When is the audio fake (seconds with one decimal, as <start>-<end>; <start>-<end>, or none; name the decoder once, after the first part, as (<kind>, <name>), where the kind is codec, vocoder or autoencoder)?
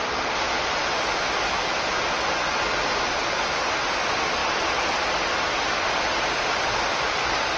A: none